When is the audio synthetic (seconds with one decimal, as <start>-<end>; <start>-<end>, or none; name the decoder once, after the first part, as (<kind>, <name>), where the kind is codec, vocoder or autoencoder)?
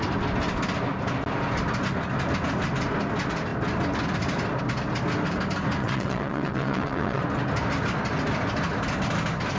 5.8-7.2 (vocoder, WaveNeXt)